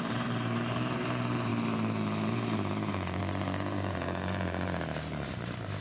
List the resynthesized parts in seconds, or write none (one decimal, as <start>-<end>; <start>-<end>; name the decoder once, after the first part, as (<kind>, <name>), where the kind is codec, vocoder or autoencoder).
0.0-1.5 (vocoder, BigVGAN v2); 2.3-3.2; 3.9-5.8